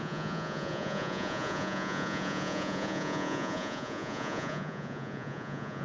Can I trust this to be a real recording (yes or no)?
no